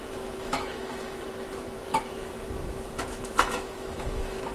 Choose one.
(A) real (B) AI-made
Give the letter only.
B